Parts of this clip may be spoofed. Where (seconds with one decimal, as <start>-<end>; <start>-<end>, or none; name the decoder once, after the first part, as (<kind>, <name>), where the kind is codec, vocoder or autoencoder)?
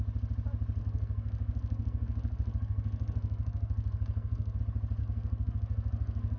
0.8-4.6 (codec, SNAC); 5.0-6.4